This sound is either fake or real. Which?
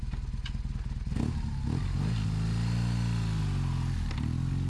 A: real